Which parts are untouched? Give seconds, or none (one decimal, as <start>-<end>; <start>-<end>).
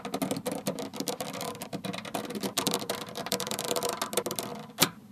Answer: 0.0-0.9; 4.0-5.1